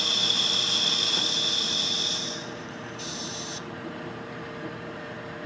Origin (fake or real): fake